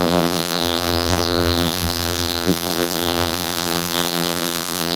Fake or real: fake